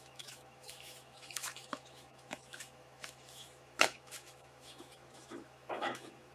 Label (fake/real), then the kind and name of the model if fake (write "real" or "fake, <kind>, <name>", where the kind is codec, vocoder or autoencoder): fake, autoencoder, DAC-VAE